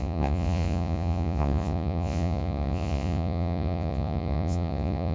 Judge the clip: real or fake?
fake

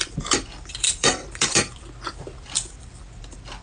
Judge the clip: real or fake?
fake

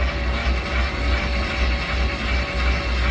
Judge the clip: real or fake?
real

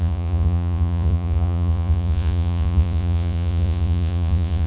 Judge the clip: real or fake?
fake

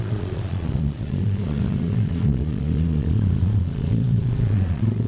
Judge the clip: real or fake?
fake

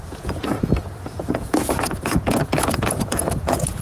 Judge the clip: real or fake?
fake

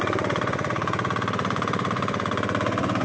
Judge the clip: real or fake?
fake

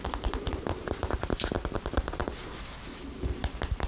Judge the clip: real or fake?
real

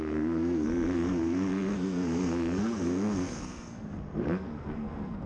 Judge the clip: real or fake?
fake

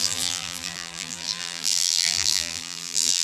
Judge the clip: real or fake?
fake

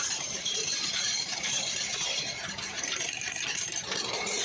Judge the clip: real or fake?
fake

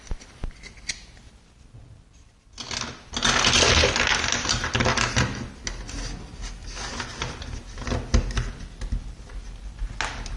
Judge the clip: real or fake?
real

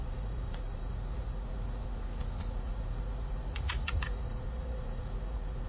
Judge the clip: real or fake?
fake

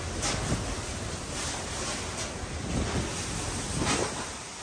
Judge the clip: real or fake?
real